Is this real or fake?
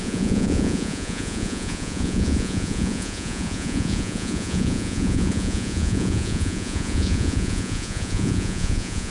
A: fake